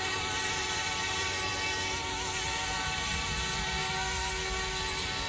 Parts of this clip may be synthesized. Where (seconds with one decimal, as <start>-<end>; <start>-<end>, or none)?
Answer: 0.0-1.5; 2.8-3.8